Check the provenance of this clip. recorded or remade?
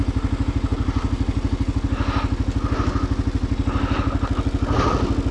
recorded